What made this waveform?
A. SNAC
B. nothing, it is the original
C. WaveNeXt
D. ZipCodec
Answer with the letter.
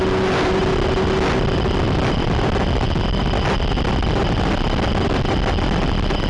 B